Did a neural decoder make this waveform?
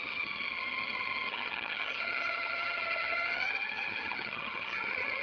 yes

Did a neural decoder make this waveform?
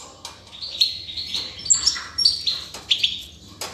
no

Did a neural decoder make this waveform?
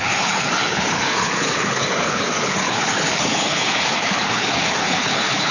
yes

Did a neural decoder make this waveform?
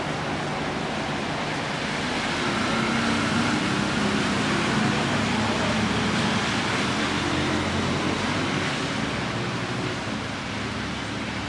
no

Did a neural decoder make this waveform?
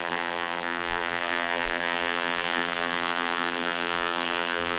yes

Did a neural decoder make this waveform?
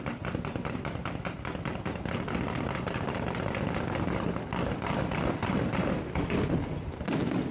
no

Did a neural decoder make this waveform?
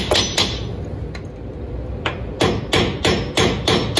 no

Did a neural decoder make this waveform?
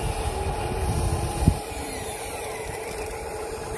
yes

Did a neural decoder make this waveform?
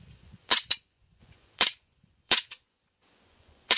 yes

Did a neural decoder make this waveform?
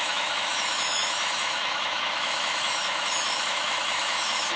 yes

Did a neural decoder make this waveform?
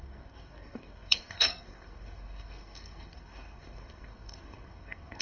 yes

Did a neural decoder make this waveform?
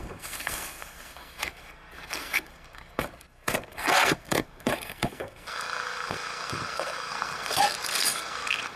yes